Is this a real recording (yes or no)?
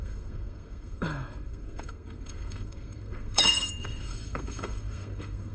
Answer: no